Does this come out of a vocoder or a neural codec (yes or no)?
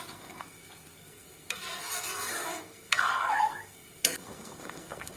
yes